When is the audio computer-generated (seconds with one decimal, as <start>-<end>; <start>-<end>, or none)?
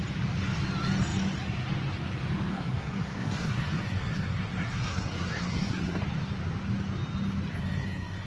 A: 2.5-6.0; 7.6-8.3